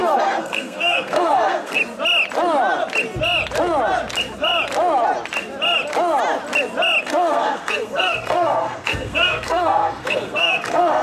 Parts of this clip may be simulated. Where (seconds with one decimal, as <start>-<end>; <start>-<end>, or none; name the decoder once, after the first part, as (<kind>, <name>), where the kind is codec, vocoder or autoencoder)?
0.0-1.8 (codec, SNAC); 7.0-11.0